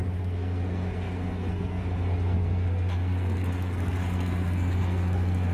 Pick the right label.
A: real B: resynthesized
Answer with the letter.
B